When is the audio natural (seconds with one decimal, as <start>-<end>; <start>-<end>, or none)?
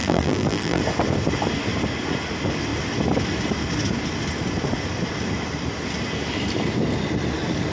0.8-7.7